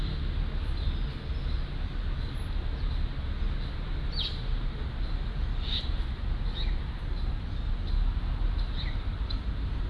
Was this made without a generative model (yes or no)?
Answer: yes